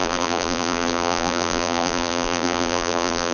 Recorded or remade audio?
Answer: remade